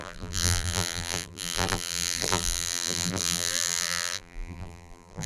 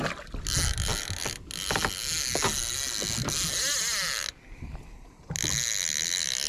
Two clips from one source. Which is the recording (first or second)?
second